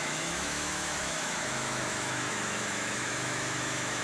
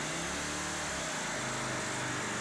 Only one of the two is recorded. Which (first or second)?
second